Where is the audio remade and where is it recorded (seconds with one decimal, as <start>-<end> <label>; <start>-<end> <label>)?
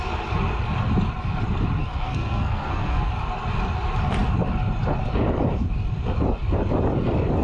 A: 0.0-1.8 recorded; 1.8-3.1 remade; 3.1-7.4 recorded